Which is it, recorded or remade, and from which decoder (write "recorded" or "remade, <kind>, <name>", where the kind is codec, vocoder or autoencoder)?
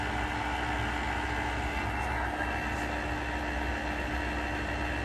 recorded